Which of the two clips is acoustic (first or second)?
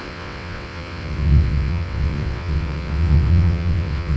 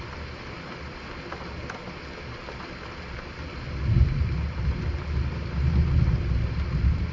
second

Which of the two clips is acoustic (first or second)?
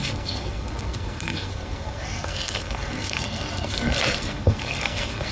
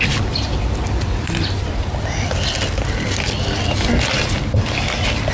second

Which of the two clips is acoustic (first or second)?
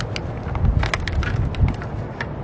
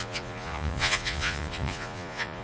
first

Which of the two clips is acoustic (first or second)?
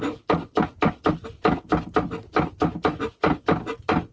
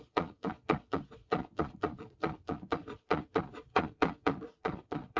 first